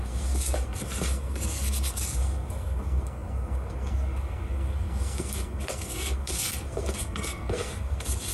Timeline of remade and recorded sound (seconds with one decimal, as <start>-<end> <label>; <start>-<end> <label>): 0.0-8.3 remade